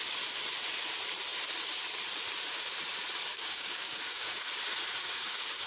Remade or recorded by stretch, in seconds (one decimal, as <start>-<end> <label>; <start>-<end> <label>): 0.0-3.3 recorded; 3.3-4.6 remade; 4.6-5.0 recorded; 5.0-5.7 remade